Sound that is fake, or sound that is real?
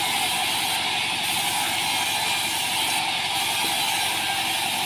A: real